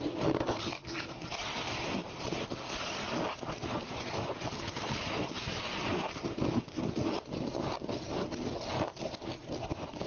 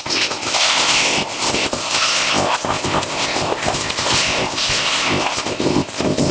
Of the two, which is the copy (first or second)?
second